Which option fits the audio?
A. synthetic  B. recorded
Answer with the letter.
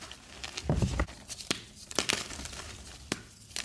A